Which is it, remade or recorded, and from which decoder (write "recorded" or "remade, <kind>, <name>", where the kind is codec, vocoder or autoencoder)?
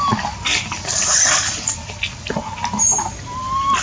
recorded